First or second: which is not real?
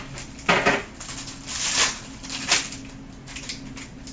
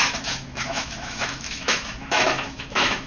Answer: second